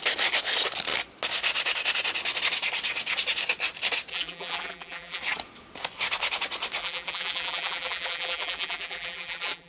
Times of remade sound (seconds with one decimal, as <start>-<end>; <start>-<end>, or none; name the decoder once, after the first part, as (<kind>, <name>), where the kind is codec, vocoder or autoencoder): 4.1-5.2 (vocoder, BigVGAN v2); 6.8-9.7

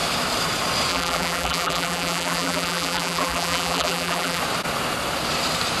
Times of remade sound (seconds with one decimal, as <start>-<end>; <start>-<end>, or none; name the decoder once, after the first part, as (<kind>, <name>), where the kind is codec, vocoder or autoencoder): 0.9-4.4 (vocoder, BigVGAN v2)

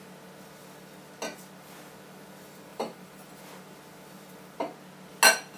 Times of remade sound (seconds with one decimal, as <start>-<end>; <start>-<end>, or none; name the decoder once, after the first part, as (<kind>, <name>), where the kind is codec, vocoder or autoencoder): 2.7-3.4 (vocoder, BigVGAN v2)

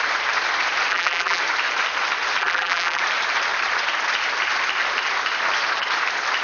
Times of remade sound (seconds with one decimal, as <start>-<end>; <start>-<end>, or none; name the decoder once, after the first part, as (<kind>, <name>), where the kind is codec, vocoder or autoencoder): 0.9-1.4 (vocoder, BigVGAN v2); 2.4-3.0

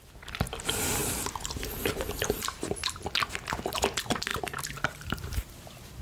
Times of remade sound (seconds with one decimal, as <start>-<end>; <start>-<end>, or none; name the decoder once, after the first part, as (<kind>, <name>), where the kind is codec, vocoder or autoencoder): 1.0-2.6 (vocoder, BigVGAN v2); 4.3-6.0

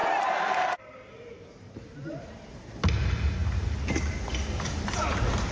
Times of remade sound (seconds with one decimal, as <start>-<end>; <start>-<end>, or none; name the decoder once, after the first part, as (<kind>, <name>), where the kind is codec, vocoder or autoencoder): 0.0-2.5 (vocoder, BigVGAN v2)

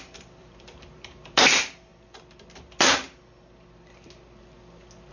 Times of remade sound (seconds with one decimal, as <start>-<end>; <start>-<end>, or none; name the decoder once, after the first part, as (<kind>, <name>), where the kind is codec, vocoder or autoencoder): 0.0-1.9 (vocoder, BigVGAN v2)

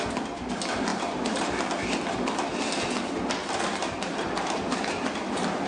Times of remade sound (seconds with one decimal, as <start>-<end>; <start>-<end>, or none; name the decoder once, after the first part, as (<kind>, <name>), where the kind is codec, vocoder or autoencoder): 0.9-1.8 (vocoder, BigVGAN v2); 3.4-4.9